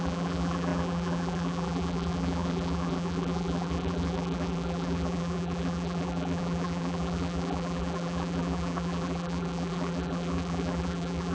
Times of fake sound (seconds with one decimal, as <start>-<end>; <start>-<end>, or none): 0.0-11.3